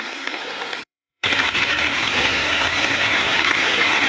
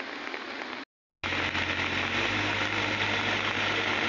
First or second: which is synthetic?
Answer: first